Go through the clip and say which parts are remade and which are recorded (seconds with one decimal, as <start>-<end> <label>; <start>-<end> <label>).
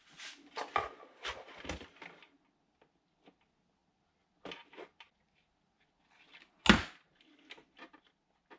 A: 0.0-8.6 recorded